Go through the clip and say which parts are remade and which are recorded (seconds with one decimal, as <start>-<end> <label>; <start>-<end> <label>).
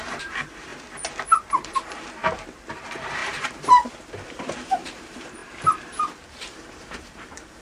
0.0-0.7 remade; 0.7-1.4 recorded; 1.4-2.2 remade; 2.2-2.7 recorded; 2.7-5.4 remade; 5.4-6.3 recorded; 6.3-7.6 remade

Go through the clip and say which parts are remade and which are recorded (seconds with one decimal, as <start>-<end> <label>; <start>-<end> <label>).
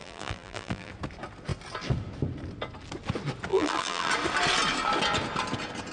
0.0-0.9 remade; 0.9-3.5 recorded; 3.5-4.1 remade; 4.1-5.9 recorded